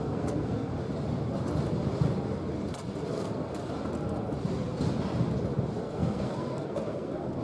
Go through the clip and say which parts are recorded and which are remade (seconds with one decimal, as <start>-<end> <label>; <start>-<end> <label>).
0.0-0.7 remade; 0.7-3.1 recorded; 3.1-3.6 remade; 3.6-5.8 recorded; 5.8-7.4 remade